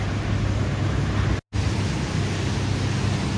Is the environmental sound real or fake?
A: real